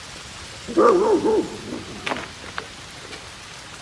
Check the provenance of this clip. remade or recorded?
recorded